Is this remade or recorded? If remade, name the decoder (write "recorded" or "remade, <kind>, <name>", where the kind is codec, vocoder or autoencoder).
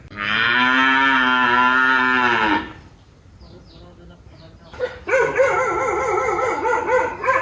recorded